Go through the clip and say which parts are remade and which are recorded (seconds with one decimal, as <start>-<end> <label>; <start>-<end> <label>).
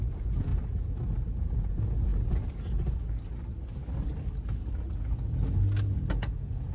0.0-0.5 remade; 0.5-1.6 recorded; 1.6-2.1 remade; 2.1-6.1 recorded; 6.1-6.7 remade